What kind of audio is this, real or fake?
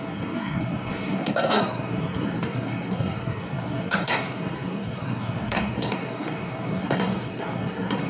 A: fake